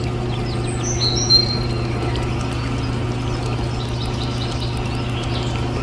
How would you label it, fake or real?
real